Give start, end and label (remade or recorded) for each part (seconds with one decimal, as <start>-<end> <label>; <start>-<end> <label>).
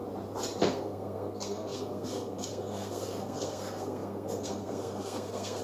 0.0-0.6 recorded; 0.6-5.6 remade